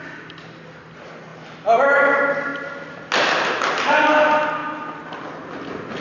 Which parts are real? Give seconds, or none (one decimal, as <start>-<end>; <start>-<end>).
0.0-2.5; 3.0-6.0